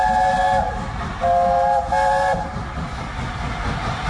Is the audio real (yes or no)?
yes